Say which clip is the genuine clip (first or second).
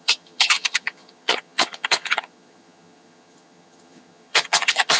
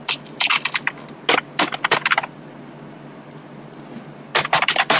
second